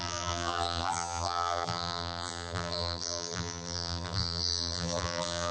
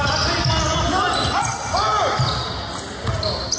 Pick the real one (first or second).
second